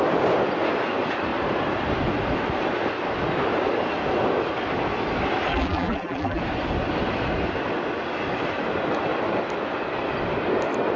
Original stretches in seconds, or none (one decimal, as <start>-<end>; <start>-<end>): 0.0-5.5; 6.4-11.0